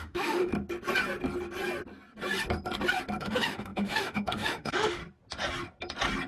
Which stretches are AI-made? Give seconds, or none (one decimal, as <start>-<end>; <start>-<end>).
0.0-0.5; 3.2-5.0